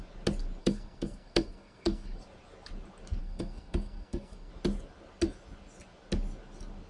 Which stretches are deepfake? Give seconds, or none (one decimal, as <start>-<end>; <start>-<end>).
0.6-2.2; 3.2-4.5

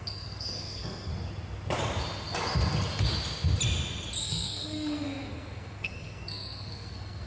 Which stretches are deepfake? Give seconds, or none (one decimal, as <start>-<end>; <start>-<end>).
0.0-1.1; 4.2-7.3

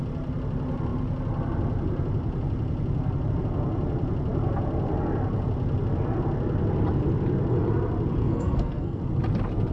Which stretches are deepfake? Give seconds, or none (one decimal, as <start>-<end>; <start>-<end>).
8.2-9.0

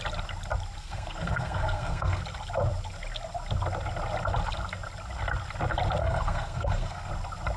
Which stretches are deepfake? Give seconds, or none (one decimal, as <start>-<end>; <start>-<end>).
0.8-2.2; 6.0-7.1

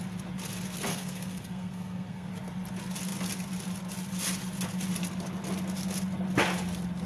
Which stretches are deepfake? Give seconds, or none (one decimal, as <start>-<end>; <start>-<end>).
0.9-2.3

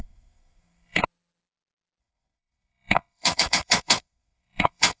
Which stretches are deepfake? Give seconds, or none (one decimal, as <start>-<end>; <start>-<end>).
0.0-1.0; 2.0-5.0

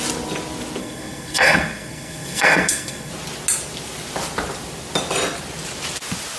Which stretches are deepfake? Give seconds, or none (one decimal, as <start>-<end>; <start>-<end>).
0.8-3.1

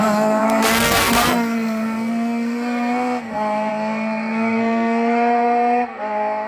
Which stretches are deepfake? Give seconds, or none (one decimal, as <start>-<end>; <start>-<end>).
0.0-6.5